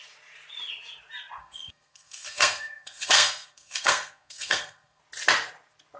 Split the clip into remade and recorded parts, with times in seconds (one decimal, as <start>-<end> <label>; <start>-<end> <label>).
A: 0.0-1.4 recorded; 1.4-5.0 remade; 5.0-6.0 recorded